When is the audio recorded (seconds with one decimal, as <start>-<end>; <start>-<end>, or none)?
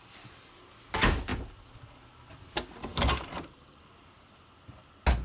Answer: 0.0-5.2